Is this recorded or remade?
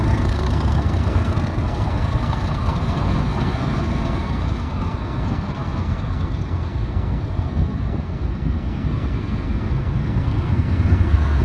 remade